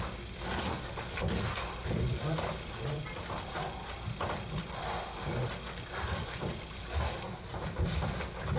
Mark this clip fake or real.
real